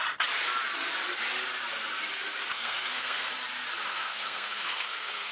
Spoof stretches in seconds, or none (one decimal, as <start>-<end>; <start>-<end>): 2.5-3.3; 3.9-5.3